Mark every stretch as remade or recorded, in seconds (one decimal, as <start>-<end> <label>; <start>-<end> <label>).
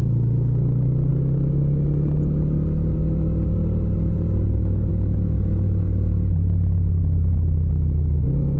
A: 0.0-8.6 recorded